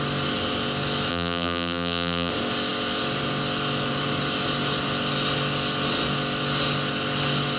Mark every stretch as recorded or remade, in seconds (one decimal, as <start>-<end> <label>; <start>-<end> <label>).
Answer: 0.0-1.1 recorded; 1.1-2.3 remade; 2.3-7.6 recorded